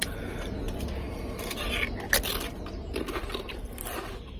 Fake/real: real